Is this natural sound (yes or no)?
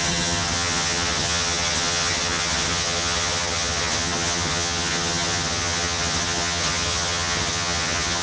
no